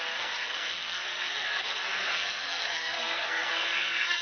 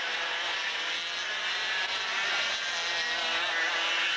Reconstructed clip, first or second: first